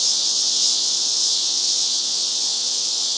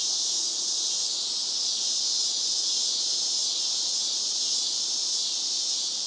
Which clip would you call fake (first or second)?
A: first